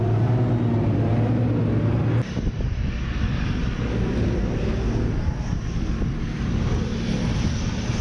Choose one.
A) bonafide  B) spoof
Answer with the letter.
A